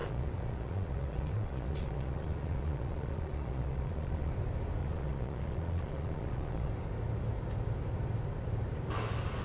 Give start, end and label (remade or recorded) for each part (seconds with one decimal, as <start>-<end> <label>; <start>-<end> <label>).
0.0-4.3 remade; 4.3-4.8 recorded; 4.8-6.7 remade; 6.7-9.4 recorded